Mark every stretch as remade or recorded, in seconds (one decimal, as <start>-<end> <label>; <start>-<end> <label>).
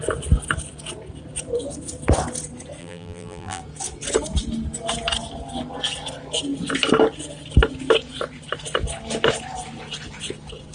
0.0-2.8 recorded; 2.8-3.6 remade; 3.6-10.7 recorded